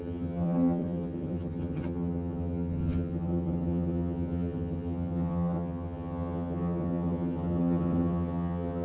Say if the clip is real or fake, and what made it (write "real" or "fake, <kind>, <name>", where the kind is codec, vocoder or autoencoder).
fake, vocoder, HiFi-GAN